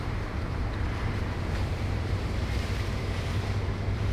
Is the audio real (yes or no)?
no